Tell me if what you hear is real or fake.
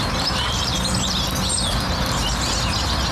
real